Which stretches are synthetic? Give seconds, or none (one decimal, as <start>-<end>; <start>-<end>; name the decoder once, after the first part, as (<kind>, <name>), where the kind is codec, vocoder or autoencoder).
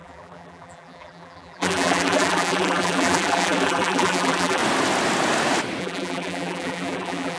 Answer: 0.0-4.6 (vocoder, BigVGAN v2); 5.8-7.4